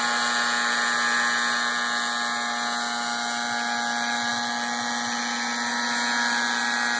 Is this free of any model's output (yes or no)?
yes